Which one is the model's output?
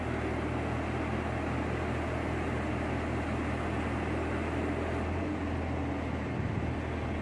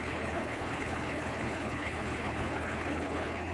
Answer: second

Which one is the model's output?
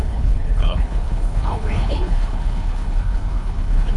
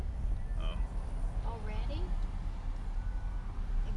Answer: first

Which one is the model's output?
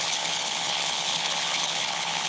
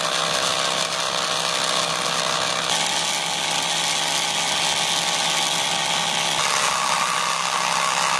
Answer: first